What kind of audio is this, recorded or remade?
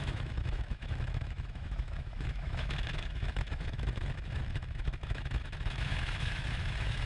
remade